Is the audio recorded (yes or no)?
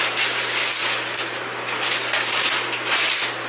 yes